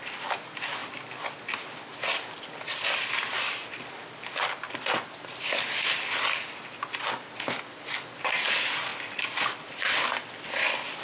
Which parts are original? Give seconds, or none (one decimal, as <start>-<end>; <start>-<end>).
0.0-11.0